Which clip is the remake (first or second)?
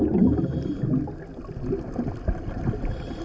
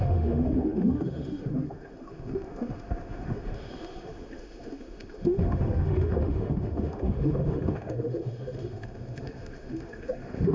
second